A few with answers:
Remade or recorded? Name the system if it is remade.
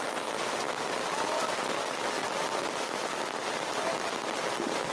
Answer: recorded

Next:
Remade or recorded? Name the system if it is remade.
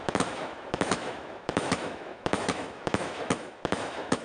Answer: remade, autoencoder, DAC-VAE